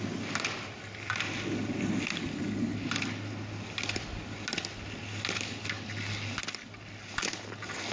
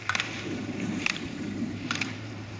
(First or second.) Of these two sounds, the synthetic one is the second